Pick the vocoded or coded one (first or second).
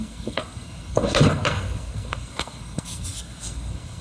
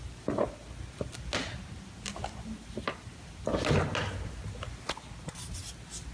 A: first